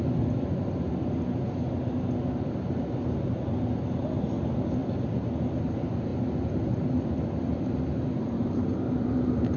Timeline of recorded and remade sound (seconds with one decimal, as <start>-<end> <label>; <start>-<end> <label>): 0.0-9.6 recorded